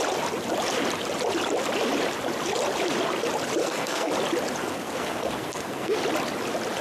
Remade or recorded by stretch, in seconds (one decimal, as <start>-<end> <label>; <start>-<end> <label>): 0.0-3.6 recorded; 3.6-4.1 remade; 4.1-4.6 recorded; 4.6-6.0 remade; 6.0-6.8 recorded